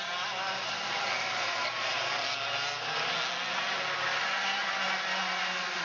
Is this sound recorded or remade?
recorded